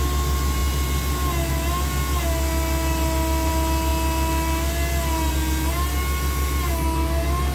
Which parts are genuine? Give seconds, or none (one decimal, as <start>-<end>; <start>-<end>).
0.0-7.5

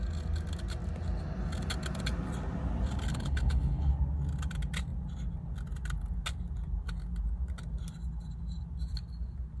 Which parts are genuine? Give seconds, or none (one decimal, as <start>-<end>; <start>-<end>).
0.0-3.1; 3.9-9.6

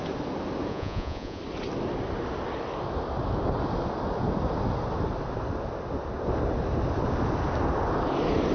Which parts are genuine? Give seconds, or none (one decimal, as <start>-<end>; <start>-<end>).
0.0-0.7; 1.4-8.5

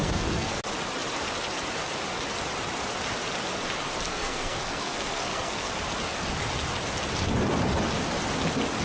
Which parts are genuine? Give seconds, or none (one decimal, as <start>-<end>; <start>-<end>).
0.6-4.1; 5.7-8.8

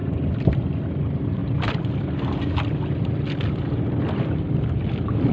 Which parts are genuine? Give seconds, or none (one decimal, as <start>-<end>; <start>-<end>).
0.0-5.3

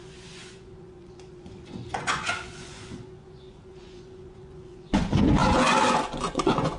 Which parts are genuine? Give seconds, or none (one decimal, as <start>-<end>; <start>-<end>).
none

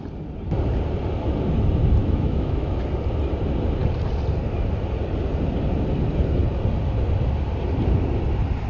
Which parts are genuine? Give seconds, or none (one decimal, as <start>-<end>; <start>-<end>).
0.0-2.0; 2.8-8.7

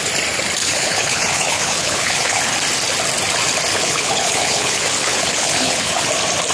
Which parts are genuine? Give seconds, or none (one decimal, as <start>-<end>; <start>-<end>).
0.0-0.6; 2.4-3.7; 6.0-6.5